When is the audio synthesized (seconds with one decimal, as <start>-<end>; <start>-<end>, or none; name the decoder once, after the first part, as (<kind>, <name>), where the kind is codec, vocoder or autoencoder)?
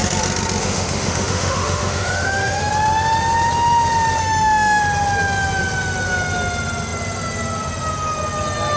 0.6-2.7 (autoencoder, DAC-VAE); 4.2-4.8